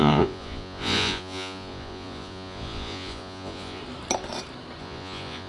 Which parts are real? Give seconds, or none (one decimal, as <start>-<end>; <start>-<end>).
3.8-4.8